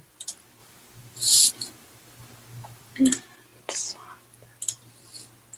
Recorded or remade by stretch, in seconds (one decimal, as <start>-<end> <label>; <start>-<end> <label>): 0.0-0.6 recorded; 0.6-3.0 remade; 3.0-5.6 recorded